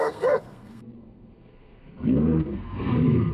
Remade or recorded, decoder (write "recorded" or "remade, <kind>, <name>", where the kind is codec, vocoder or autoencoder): remade, codec, SNAC